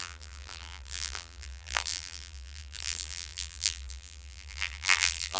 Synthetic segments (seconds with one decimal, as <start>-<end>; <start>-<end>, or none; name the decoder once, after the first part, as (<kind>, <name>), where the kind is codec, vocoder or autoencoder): 0.0-5.4 (vocoder, BigVGAN v2)